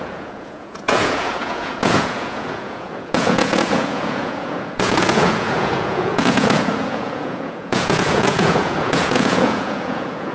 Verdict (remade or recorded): remade